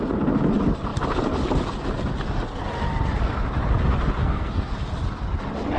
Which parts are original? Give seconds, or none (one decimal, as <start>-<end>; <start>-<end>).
0.0-4.2; 4.7-5.8